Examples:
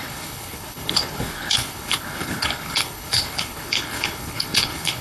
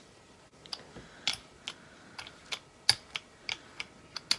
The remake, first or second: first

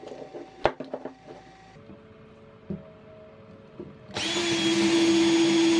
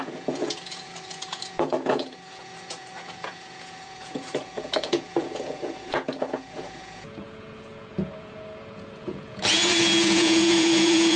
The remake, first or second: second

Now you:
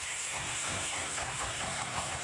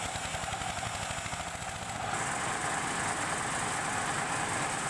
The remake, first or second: first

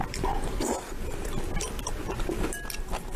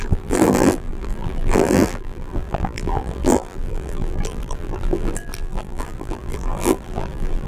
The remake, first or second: second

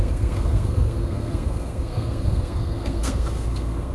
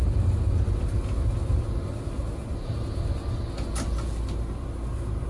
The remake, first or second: first